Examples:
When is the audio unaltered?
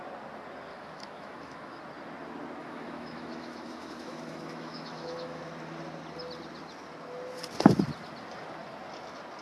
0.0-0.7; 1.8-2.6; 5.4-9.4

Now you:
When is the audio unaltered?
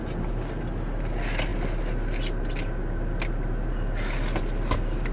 0.0-5.1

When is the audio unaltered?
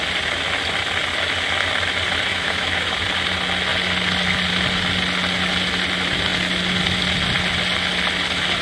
0.0-2.3; 2.9-8.6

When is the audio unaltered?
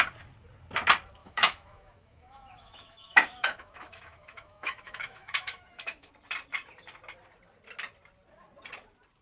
0.0-1.2; 6.1-9.2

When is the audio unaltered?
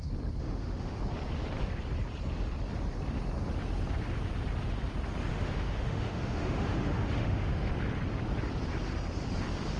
0.0-0.4; 1.0-5.3; 7.7-9.8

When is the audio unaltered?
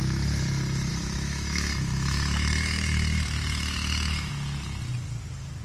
0.0-0.9; 4.3-5.6